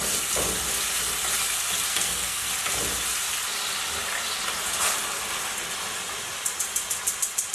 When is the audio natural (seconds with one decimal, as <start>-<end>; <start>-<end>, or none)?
0.0-1.9; 2.5-7.5